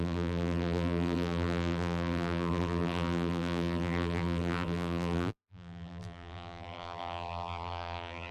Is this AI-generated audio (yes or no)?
yes